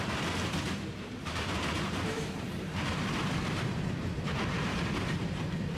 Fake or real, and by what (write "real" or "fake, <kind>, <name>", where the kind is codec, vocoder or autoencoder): fake, vocoder, BigVGAN v2